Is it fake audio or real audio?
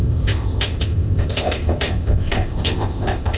fake